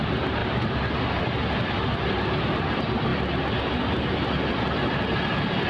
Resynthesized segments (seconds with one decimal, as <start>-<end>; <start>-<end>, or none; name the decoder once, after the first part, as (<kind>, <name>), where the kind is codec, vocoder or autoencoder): none